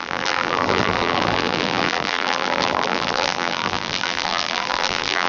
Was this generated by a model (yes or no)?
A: yes